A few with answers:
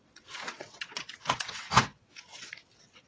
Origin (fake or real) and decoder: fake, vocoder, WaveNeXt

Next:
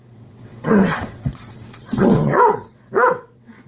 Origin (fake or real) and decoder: fake, vocoder, WaveNeXt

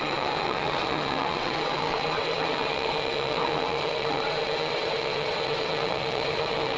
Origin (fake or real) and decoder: fake, vocoder, WaveNeXt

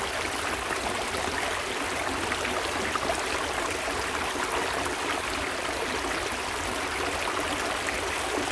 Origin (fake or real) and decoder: real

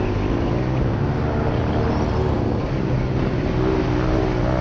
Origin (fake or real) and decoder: real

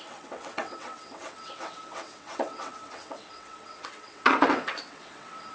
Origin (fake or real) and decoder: fake, vocoder, WaveNeXt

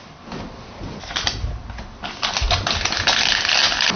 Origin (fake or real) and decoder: real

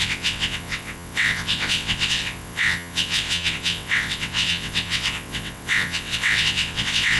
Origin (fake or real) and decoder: fake, vocoder, WaveNeXt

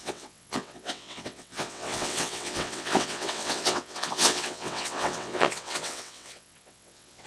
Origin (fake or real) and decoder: fake, vocoder, WaveNeXt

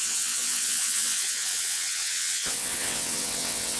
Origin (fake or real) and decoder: fake, vocoder, WaveNeXt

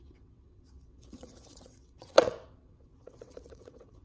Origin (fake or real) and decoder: fake, vocoder, WaveNeXt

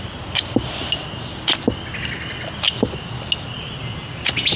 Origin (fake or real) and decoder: real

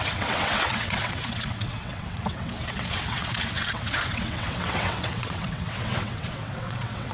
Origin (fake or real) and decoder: fake, vocoder, WaveNeXt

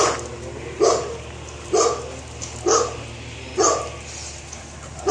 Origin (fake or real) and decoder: real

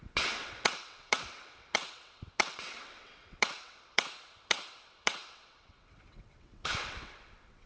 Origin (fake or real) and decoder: fake, vocoder, WaveNeXt